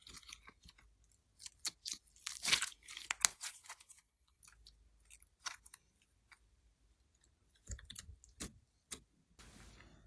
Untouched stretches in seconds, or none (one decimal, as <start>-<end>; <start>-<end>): 0.0-3.3; 4.4-10.1

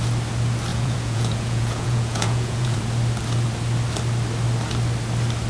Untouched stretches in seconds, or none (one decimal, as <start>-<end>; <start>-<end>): 0.0-0.7; 2.8-5.5

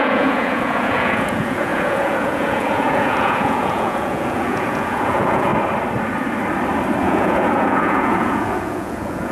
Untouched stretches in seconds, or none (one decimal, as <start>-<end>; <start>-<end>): 5.5-7.0

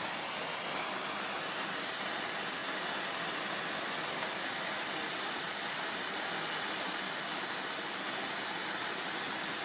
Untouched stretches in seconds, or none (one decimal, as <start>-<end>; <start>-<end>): 0.0-9.6

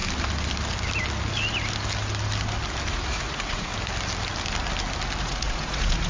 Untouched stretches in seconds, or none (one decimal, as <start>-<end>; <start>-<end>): 0.0-2.9; 3.7-5.2